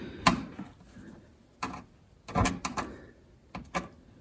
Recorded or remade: recorded